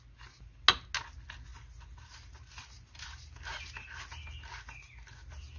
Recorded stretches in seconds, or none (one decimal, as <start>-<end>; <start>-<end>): 0.0-5.6